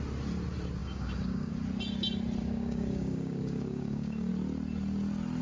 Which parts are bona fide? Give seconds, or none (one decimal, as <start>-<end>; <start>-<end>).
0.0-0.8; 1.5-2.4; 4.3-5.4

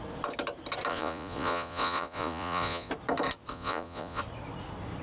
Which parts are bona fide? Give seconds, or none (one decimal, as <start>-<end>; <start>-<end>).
0.0-0.9; 2.9-3.5; 4.2-5.0

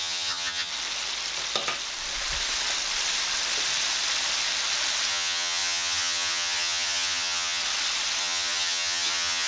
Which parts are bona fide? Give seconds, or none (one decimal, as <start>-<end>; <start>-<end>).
0.7-5.1; 7.6-8.2

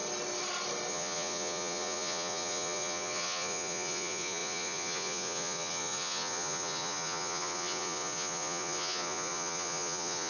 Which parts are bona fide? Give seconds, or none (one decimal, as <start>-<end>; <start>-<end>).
0.0-0.9

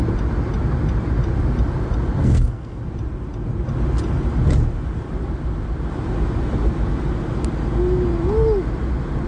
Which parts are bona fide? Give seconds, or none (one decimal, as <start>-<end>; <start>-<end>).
0.0-2.2; 2.8-9.3